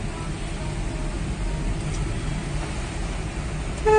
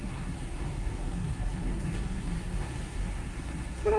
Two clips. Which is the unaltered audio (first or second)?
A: first